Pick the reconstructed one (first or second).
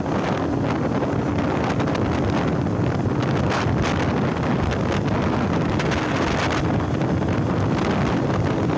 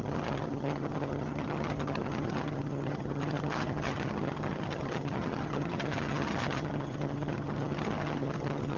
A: second